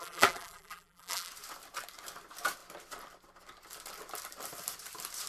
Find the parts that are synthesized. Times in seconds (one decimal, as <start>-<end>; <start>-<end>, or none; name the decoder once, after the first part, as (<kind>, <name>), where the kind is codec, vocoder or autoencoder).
0.0-1.3 (vocoder, BigVGAN v2)